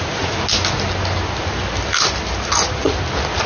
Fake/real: real